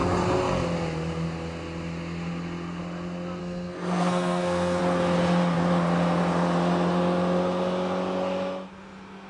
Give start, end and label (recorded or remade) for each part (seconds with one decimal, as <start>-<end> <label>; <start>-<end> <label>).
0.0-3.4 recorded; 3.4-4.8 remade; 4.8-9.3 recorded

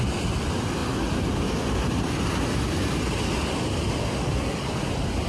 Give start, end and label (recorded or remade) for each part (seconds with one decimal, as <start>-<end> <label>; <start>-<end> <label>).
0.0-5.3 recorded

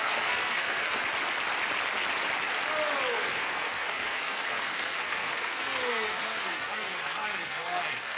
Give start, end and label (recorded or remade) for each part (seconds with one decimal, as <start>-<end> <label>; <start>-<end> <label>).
0.0-1.0 remade; 1.0-3.1 recorded; 3.1-8.2 remade